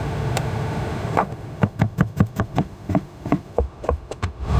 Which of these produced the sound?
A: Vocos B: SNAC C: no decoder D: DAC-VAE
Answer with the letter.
D